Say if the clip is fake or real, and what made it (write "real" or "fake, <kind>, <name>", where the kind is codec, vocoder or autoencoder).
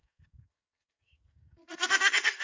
fake, codec, SNAC